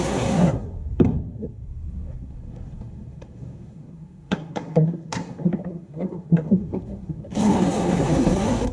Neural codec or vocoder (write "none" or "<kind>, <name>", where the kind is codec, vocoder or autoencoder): codec, SNAC